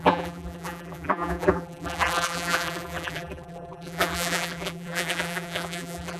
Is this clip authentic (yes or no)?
no